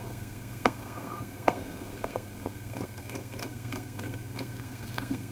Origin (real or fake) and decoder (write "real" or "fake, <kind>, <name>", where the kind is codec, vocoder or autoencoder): fake, codec, SNAC